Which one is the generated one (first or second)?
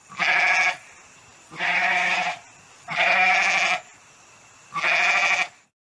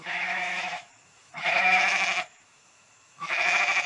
second